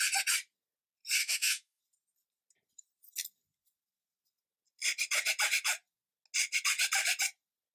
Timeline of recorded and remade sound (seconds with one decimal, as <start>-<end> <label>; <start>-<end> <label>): 0.0-1.2 recorded; 1.2-1.8 remade; 1.8-7.7 recorded